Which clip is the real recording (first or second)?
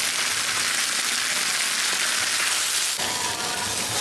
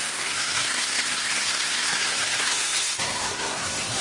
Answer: first